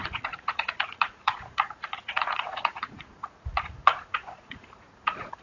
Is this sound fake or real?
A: fake